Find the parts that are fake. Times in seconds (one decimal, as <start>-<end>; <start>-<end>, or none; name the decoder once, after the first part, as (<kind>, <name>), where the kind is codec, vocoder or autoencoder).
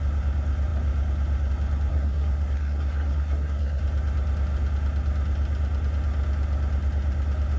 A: 1.9-3.8 (codec, SNAC)